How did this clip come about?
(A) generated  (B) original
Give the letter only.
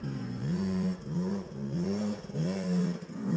A